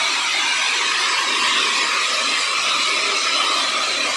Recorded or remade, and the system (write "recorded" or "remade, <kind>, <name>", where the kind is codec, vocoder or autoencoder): recorded